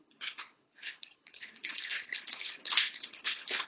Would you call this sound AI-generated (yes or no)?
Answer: yes